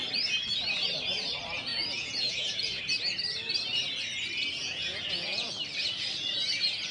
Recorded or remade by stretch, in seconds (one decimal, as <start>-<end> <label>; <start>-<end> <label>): 0.0-1.7 recorded; 1.7-2.8 remade; 2.8-4.6 recorded; 4.6-5.5 remade; 5.5-6.9 recorded